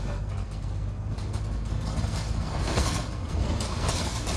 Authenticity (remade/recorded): remade